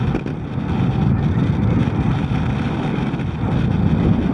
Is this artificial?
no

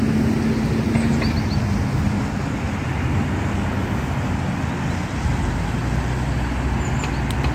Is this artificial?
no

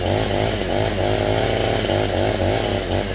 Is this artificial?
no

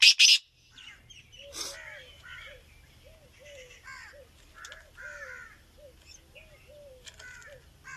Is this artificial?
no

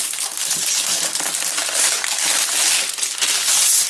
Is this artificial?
no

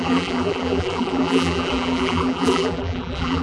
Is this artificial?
yes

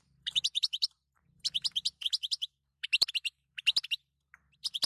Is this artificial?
yes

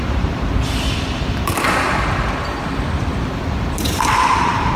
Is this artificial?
yes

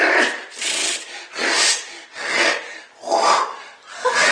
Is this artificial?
yes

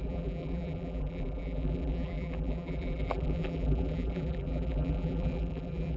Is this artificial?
yes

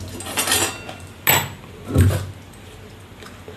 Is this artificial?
no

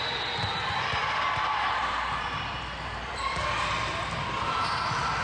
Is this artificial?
yes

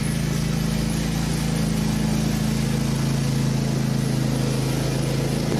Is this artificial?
no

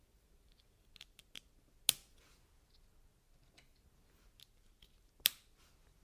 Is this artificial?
no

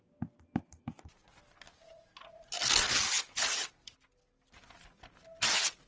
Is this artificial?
no